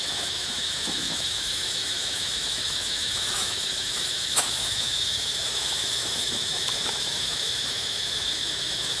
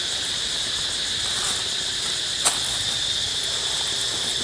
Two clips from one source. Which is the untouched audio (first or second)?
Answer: second